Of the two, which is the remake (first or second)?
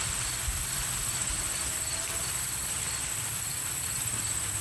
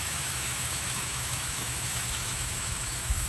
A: second